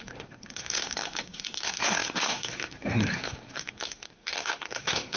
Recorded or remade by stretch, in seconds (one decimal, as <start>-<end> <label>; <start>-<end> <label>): 0.0-5.2 remade